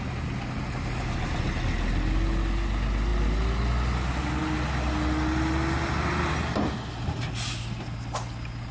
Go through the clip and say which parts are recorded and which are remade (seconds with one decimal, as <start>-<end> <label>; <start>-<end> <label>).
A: 0.0-8.7 recorded